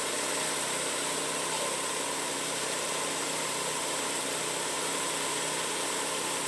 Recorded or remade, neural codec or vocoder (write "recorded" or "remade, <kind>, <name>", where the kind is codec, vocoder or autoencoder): remade, vocoder, BigVGAN v2